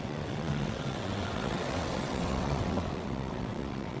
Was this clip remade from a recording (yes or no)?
yes